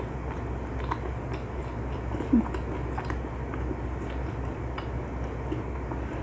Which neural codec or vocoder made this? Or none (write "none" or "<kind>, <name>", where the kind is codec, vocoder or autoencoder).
none